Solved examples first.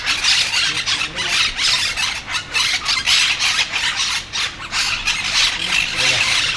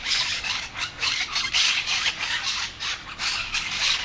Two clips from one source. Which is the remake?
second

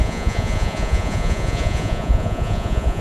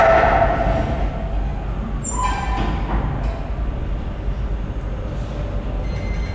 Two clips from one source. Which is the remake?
first